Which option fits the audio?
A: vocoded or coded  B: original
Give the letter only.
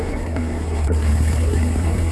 A